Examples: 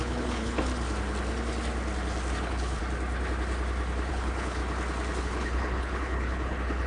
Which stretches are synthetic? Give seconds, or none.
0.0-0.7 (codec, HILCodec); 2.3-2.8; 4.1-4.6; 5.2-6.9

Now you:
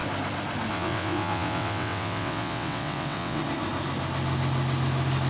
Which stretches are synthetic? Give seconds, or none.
0.7-3.4 (vocoder, WaveNeXt)